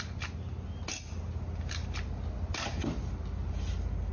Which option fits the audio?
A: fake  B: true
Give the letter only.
B